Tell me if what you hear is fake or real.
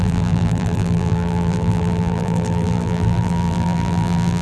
fake